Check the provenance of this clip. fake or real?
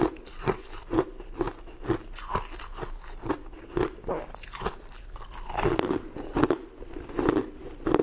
real